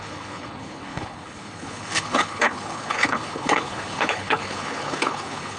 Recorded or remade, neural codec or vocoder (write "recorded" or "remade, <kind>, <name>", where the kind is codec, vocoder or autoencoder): remade, codec, HILCodec